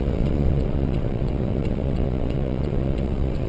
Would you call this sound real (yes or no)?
no